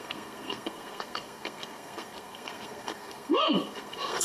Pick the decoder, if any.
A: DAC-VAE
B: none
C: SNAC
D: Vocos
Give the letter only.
C